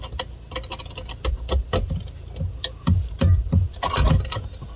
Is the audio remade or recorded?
recorded